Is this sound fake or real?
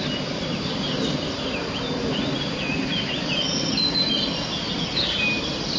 real